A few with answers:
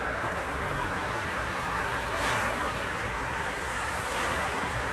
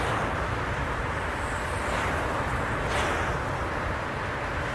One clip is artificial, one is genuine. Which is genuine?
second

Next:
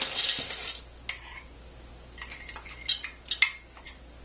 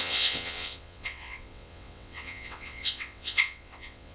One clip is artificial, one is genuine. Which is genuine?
first